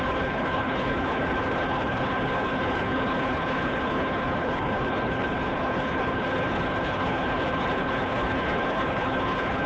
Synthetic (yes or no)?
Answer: yes